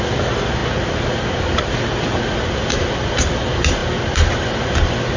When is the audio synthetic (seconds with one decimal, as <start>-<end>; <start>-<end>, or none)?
none